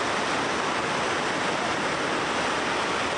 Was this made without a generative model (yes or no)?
yes